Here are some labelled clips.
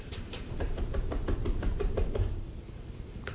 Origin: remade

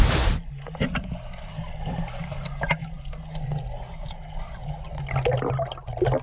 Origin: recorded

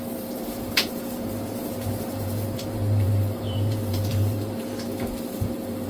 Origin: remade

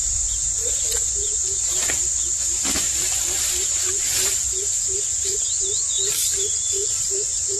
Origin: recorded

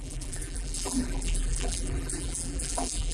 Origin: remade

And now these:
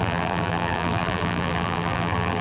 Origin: remade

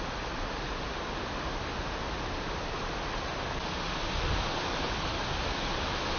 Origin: recorded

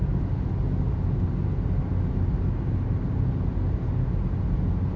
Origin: recorded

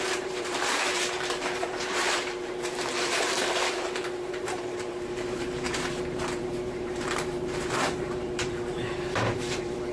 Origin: remade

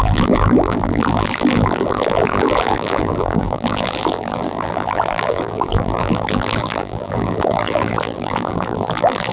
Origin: remade